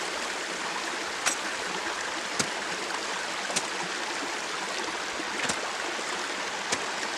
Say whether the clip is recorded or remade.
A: recorded